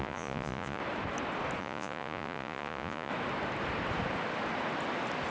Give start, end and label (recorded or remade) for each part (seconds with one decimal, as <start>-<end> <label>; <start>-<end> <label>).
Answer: 0.0-0.8 remade; 0.8-1.6 recorded; 1.6-3.1 remade; 3.1-5.3 recorded